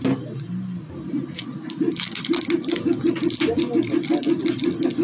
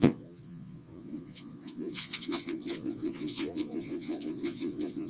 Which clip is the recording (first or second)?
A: first